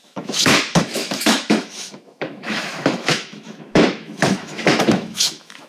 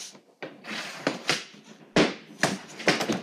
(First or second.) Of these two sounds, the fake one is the first